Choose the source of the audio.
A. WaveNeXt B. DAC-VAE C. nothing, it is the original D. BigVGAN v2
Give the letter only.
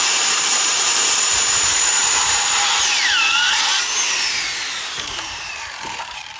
D